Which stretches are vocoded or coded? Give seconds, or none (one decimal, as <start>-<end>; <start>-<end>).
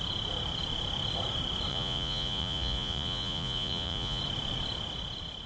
1.7-4.2